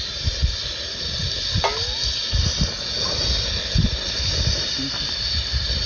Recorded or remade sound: recorded